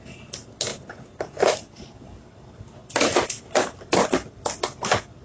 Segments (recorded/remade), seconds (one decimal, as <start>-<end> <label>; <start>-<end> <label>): 0.0-0.7 recorded; 0.7-1.9 remade; 1.9-2.8 recorded; 2.8-4.5 remade; 4.5-5.2 recorded